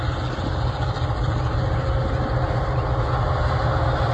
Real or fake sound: real